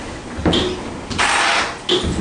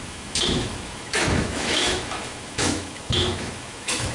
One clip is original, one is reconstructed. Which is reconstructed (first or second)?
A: second